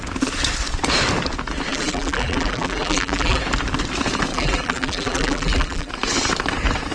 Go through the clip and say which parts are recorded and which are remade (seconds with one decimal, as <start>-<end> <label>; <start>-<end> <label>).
0.0-1.7 recorded; 1.7-3.4 remade; 3.4-4.3 recorded; 4.3-5.9 remade; 5.9-6.9 recorded